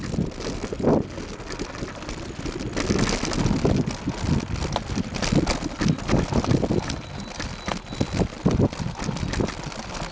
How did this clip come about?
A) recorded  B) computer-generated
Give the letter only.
A